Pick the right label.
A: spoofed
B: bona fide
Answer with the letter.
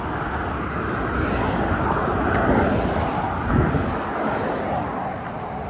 B